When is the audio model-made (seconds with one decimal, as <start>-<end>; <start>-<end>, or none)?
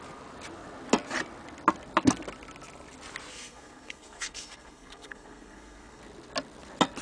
3.3-6.0